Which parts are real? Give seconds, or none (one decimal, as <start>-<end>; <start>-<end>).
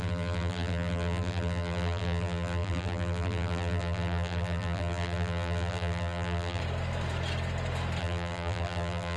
6.6-8.0